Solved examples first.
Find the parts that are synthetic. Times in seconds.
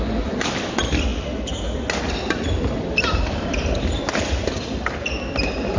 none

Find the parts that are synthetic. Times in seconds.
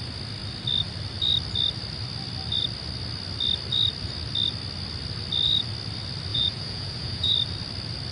6.3-7.3 (vocoder, Vocos)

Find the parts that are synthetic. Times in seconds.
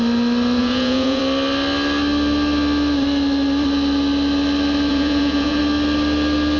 0.6-1.2 (vocoder, Vocos); 4.9-5.6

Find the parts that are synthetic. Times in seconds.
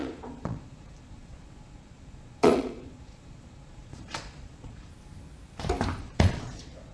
0.0-4.9 (vocoder, Vocos); 6.0-6.9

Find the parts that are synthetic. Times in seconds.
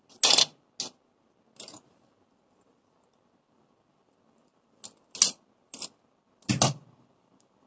none